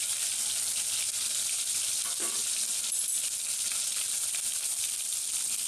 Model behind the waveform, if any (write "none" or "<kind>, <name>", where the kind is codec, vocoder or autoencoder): none